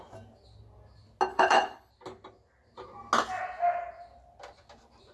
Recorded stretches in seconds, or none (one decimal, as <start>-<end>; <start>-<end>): 0.0-1.3; 1.9-5.1